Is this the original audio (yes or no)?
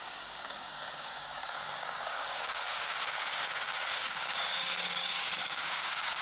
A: no